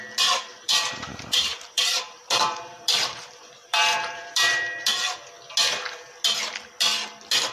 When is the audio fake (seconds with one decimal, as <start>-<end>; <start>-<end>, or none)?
0.5-5.0

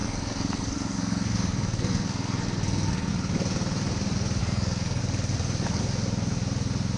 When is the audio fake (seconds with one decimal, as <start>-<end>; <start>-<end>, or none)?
0.0-3.1; 4.4-5.0

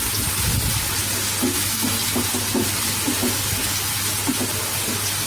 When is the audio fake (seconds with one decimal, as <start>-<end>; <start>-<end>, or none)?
none

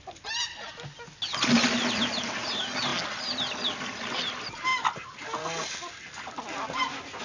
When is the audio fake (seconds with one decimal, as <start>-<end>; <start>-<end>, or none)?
none

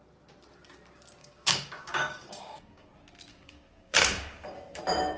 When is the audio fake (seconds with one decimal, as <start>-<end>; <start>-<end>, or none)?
1.2-2.9; 3.3-4.8

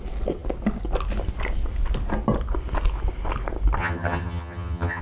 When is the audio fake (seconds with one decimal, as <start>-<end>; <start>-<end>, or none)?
3.8-5.0

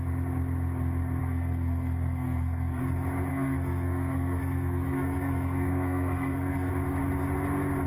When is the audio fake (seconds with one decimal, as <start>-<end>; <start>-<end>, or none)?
1.2-2.8; 3.3-6.7